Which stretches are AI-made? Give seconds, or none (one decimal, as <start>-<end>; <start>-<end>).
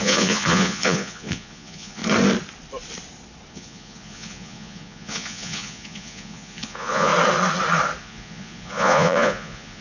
0.0-2.0; 3.5-7.1; 8.0-9.8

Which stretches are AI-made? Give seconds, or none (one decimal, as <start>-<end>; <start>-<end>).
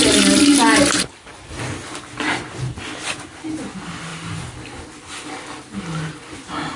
none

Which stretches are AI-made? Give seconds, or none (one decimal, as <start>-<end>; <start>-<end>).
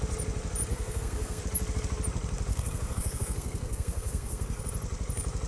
0.7-1.4; 2.5-4.6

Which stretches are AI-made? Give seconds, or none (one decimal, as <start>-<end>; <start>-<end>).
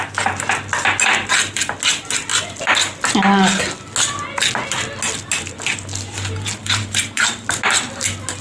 6.6-7.6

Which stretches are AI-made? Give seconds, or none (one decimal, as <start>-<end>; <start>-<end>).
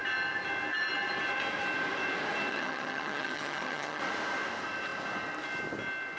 2.5-4.0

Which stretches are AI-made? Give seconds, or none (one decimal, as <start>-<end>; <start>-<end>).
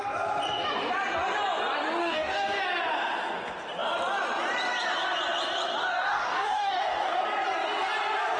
2.0-2.6; 5.8-7.2